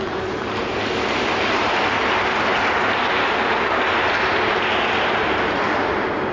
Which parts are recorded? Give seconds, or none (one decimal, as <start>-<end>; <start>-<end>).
0.0-6.3